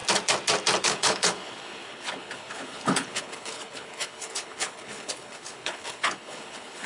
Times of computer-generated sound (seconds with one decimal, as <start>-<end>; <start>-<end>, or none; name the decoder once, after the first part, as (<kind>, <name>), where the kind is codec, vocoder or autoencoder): 0.8-6.9 (codec, HILCodec)